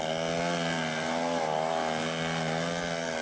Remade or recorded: recorded